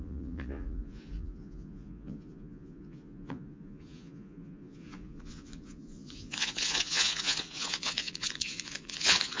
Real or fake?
fake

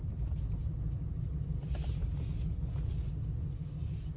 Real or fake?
real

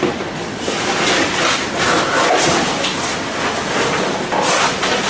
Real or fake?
real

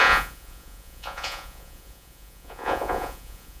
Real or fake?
fake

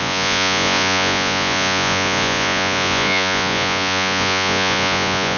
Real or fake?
fake